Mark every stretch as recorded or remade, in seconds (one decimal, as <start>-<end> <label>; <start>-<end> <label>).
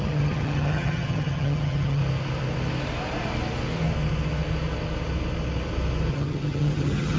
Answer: 0.0-2.0 remade; 2.0-6.1 recorded; 6.1-7.2 remade